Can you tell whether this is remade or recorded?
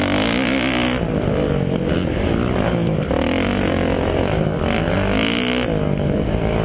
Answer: recorded